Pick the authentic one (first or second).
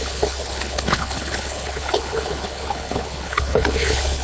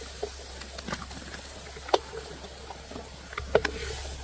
second